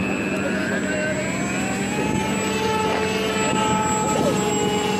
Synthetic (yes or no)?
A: no